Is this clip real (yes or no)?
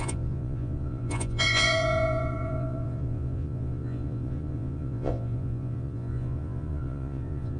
no